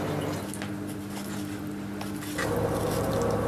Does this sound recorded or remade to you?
recorded